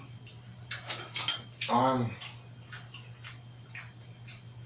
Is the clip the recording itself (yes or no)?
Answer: yes